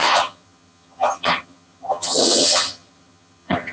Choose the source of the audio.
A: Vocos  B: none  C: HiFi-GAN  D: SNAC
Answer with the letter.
C